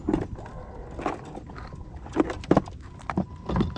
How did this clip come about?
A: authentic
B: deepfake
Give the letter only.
A